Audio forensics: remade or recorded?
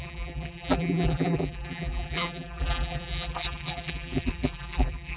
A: remade